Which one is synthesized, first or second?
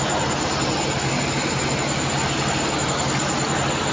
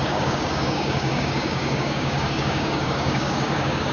second